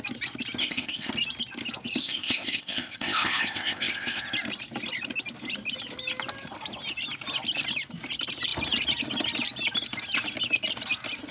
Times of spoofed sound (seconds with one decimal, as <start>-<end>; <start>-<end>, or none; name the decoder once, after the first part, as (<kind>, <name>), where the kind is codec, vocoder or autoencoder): 0.6-1.1 (codec, ZipCodec); 2.0-4.2